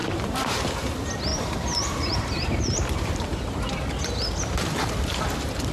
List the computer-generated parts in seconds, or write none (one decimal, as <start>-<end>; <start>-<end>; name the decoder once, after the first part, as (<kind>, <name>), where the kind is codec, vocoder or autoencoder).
0.0-0.9 (vocoder, BigVGAN v2); 1.3-3.1